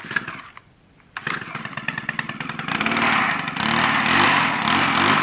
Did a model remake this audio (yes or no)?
no